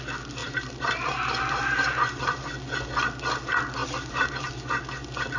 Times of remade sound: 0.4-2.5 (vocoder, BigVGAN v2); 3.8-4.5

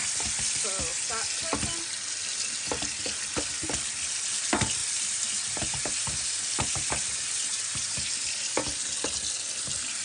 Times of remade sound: 4.8-8.3 (vocoder, BigVGAN v2)

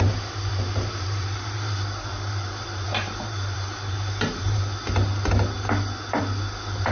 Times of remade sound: 0.5-4.6 (vocoder, BigVGAN v2)